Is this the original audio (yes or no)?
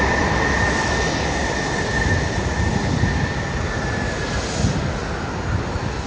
yes